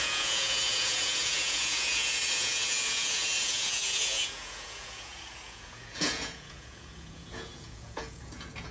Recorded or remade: remade